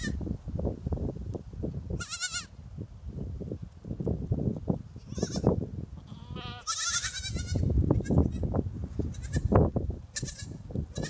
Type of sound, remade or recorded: recorded